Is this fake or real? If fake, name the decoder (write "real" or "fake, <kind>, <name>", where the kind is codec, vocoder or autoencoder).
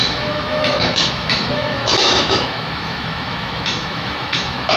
fake, autoencoder, DAC-VAE